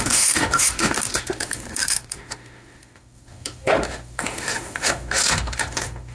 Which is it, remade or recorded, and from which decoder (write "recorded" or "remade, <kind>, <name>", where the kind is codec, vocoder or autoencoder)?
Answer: remade, autoencoder, DAC-VAE